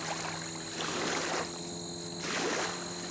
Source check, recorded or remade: recorded